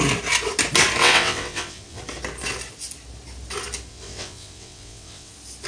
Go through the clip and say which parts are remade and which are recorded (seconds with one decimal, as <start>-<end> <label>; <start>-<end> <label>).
0.0-1.0 recorded; 1.0-2.0 remade; 2.0-3.9 recorded; 3.9-5.3 remade; 5.3-5.7 recorded

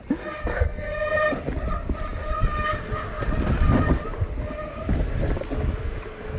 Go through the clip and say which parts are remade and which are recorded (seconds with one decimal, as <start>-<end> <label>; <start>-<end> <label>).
0.0-0.5 recorded; 0.5-1.3 remade; 1.3-6.4 recorded

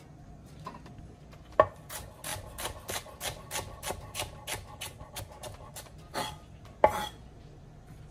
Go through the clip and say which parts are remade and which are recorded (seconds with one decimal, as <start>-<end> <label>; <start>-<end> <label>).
0.0-8.1 recorded

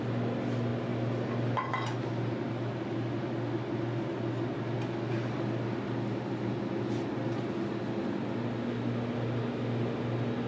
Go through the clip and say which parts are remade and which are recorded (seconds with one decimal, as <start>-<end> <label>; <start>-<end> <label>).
0.0-10.5 recorded

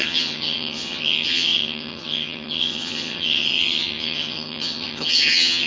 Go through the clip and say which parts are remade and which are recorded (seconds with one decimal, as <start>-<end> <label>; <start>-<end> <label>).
0.0-5.7 remade

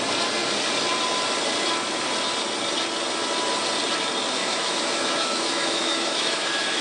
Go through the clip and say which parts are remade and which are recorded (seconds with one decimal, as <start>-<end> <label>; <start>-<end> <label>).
0.0-4.4 recorded; 4.4-6.8 remade

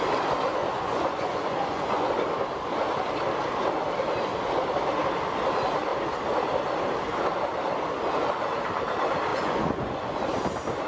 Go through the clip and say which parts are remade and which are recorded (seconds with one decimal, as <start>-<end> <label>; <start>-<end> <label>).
0.0-0.6 recorded; 0.6-2.1 remade; 2.1-9.3 recorded; 9.3-10.2 remade; 10.2-10.9 recorded